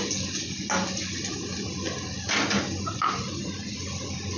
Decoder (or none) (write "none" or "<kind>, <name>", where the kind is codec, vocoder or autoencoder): none